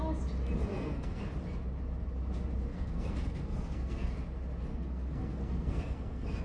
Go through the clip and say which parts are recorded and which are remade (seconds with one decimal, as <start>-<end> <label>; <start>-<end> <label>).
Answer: 0.0-0.7 recorded; 0.7-1.2 remade; 1.2-2.7 recorded; 2.7-4.1 remade; 4.1-4.7 recorded; 4.7-6.4 remade